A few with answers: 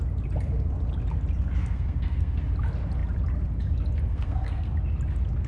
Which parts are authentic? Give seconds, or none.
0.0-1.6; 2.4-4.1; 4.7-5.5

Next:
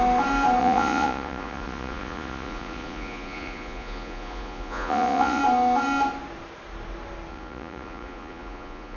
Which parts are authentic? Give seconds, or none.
0.0-0.6; 5.4-7.3

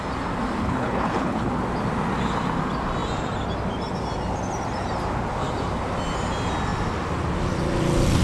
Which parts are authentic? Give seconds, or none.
0.0-0.6; 1.5-8.2

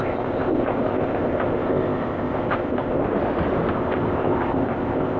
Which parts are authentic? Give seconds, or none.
3.0-3.7

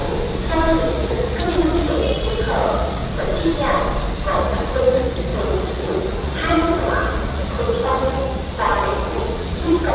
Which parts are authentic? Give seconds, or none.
0.0-0.9; 3.0-4.4